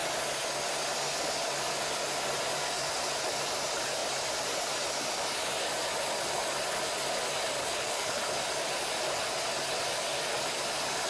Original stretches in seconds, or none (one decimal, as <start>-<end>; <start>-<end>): 0.0-7.6; 8.2-11.1